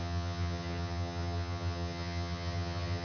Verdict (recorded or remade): remade